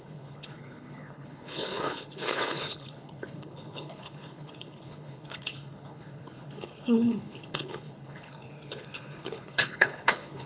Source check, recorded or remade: remade